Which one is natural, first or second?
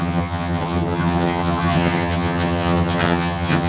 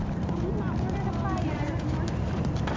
second